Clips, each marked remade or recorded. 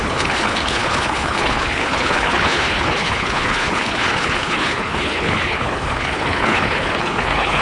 remade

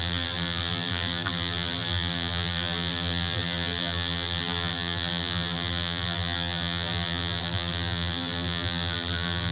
remade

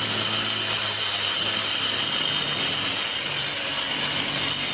recorded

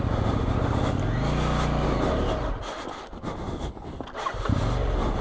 recorded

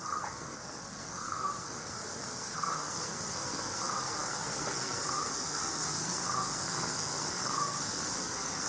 remade